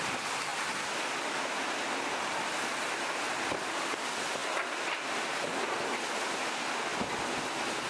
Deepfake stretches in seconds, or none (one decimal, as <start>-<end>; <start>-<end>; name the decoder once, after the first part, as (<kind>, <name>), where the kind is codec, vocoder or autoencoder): none